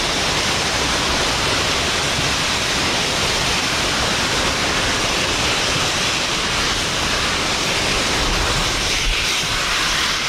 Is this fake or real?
real